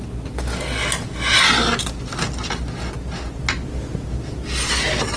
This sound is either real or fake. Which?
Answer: real